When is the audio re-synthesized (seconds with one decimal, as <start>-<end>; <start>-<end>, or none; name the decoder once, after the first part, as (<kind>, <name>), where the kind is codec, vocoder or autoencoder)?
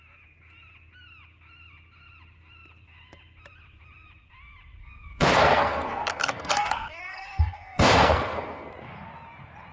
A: 4.8-8.7 (codec, SNAC)